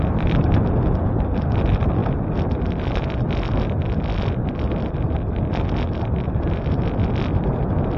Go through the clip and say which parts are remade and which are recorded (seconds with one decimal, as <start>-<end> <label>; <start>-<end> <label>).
0.0-8.0 recorded